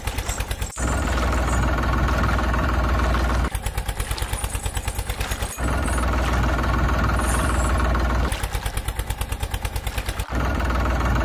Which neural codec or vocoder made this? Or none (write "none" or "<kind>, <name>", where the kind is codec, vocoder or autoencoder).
none